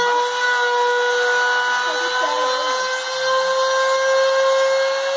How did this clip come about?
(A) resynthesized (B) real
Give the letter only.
B